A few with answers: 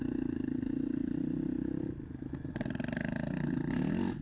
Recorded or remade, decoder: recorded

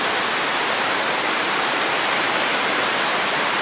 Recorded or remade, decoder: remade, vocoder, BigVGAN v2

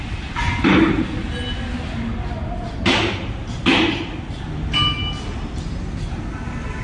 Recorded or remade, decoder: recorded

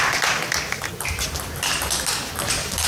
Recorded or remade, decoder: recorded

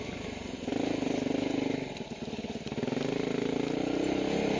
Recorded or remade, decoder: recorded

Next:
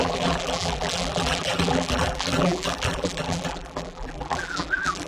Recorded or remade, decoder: remade, vocoder, BigVGAN v2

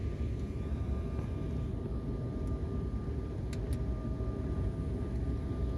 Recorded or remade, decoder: recorded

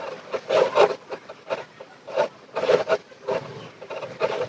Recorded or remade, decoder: recorded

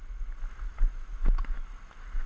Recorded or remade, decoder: recorded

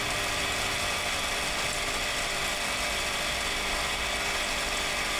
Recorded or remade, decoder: recorded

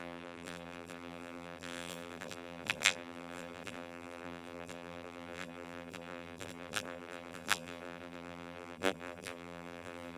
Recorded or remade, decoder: remade, vocoder, BigVGAN v2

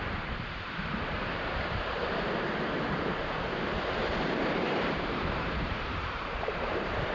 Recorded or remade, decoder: remade, vocoder, BigVGAN v2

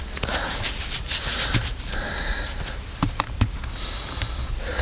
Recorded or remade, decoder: recorded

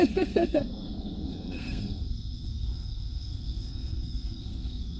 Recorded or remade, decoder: remade, codec, SNAC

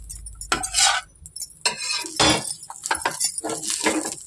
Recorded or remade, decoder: recorded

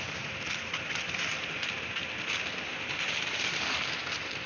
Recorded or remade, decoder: remade, vocoder, BigVGAN v2